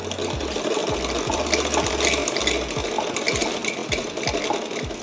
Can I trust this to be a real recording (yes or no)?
yes